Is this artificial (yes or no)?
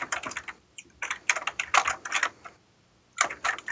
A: no